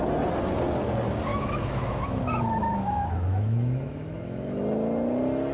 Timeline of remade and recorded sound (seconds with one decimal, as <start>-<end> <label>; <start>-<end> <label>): 0.0-1.3 recorded; 1.3-4.6 remade; 4.6-5.5 recorded